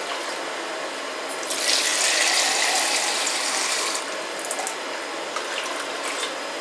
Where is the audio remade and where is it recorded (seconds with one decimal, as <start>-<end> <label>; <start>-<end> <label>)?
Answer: 0.0-6.6 recorded